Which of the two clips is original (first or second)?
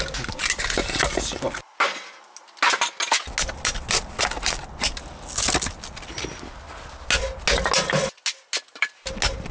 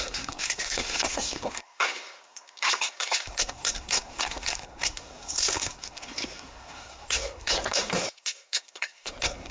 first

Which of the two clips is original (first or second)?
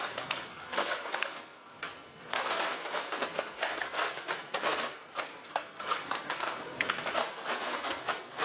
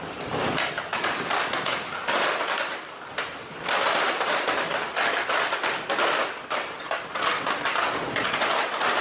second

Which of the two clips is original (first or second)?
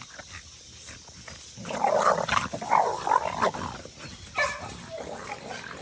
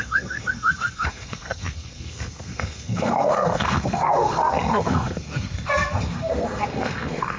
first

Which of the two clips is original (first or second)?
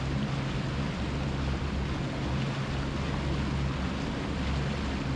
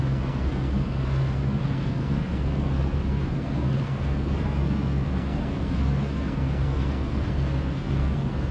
first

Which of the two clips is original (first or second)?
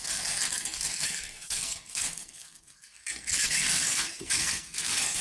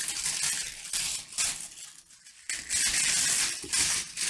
second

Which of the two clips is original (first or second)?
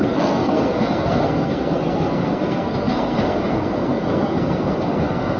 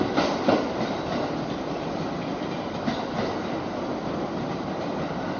second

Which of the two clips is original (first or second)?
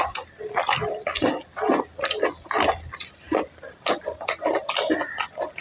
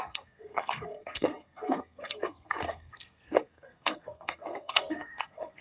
first